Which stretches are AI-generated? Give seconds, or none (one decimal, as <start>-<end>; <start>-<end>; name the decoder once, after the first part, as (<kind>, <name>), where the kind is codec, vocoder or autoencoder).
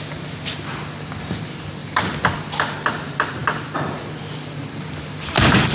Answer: none